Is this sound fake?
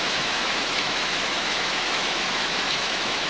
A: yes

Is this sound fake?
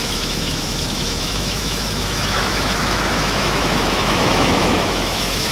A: yes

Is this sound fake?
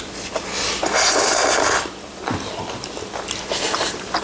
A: no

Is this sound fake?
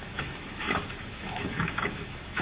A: yes